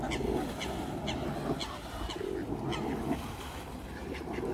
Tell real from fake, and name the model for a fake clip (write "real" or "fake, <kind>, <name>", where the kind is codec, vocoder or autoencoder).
real